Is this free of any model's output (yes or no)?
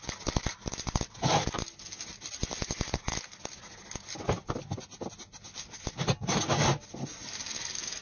yes